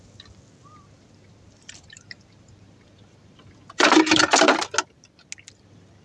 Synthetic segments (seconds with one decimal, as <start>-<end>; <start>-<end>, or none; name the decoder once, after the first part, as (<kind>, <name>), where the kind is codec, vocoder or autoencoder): 0.6-4.2 (vocoder, BigVGAN v2)